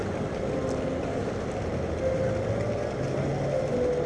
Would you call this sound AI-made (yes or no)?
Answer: no